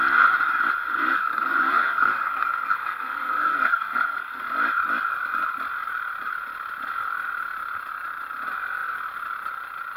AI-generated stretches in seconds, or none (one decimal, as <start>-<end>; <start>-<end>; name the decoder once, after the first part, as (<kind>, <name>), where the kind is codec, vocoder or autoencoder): 0.8-4.4 (codec, SNAC)